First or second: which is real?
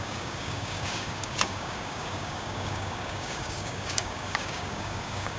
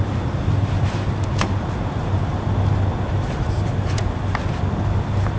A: second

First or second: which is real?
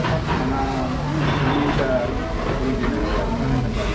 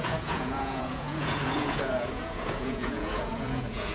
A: first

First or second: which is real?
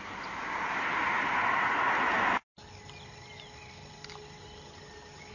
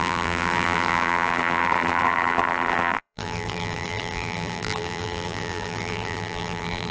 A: first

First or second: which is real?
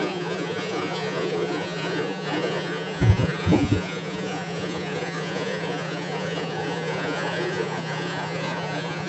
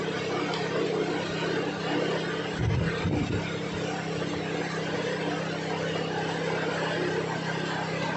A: second